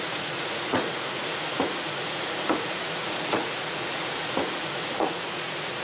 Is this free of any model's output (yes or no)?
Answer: no